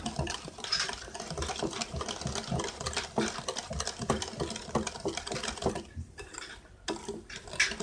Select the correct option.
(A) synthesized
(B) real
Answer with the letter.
B